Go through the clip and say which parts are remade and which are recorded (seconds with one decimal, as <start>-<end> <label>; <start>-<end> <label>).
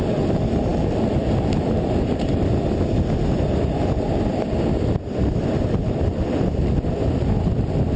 0.0-8.0 recorded